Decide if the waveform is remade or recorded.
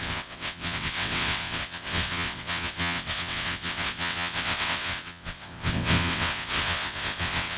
remade